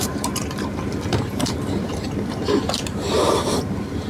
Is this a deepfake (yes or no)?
yes